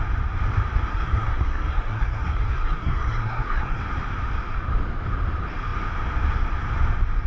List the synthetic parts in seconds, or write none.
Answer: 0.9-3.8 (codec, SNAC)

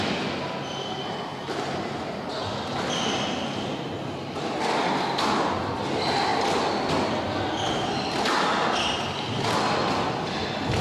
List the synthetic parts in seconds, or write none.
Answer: none

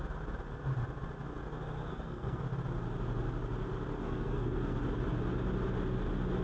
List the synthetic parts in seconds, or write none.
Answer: 1.9-2.4 (codec, SNAC); 4.0-4.8

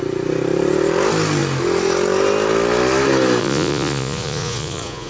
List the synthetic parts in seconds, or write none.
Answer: 3.4-5.1 (vocoder, Vocos)